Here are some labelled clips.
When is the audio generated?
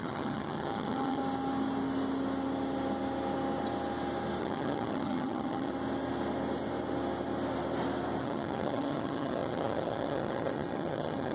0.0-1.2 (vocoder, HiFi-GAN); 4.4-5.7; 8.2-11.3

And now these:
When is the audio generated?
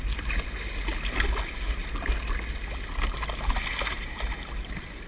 none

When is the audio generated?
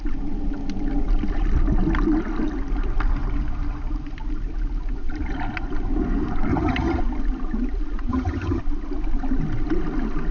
6.5-7.0 (vocoder, HiFi-GAN); 8.1-8.6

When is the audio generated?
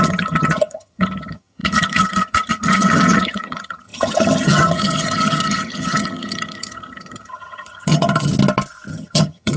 0.0-8.3 (vocoder, HiFi-GAN); 8.9-9.6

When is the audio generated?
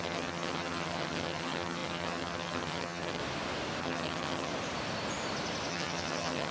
0.0-3.2 (vocoder, HiFi-GAN); 3.8-4.5; 5.7-6.5